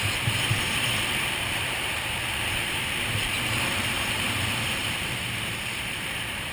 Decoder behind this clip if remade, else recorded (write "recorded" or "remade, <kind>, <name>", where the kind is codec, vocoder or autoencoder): remade, vocoder, BigVGAN v2